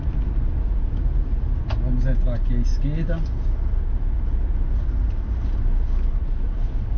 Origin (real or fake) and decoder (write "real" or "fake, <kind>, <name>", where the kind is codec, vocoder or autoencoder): real